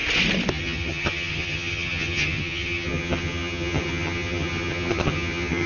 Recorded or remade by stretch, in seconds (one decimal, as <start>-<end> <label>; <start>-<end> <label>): 0.0-0.5 recorded; 0.5-5.7 remade